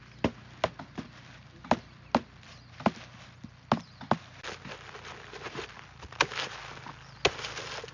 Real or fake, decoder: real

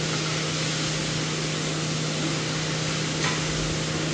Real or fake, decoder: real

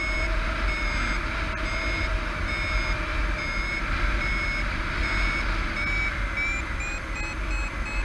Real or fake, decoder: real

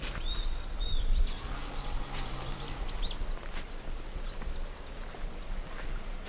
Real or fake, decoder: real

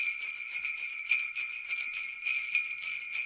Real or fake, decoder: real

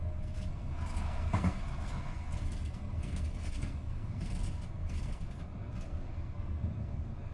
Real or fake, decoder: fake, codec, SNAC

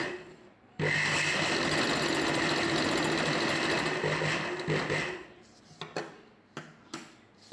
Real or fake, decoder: real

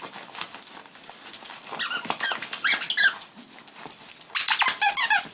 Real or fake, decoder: real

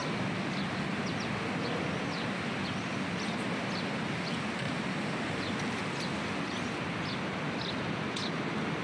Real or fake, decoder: real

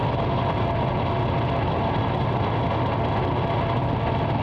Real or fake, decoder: real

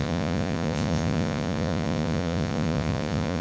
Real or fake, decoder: fake, vocoder, Vocos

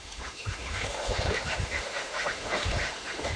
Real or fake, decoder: fake, autoencoder, DAC-VAE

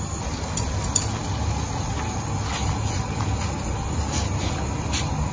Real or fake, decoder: real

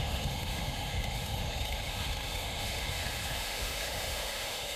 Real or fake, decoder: fake, autoencoder, DAC-VAE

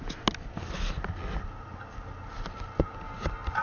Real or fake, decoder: real